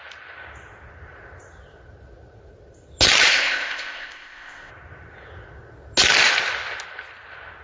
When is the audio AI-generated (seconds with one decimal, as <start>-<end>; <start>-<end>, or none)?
3.3-4.7